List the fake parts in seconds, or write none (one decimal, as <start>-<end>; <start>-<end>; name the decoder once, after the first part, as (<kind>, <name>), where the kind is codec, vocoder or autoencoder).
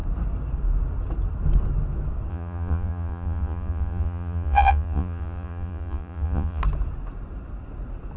2.3-6.6 (vocoder, Vocos)